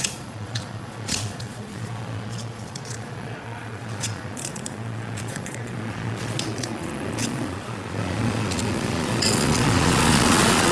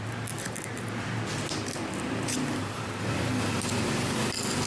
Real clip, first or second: second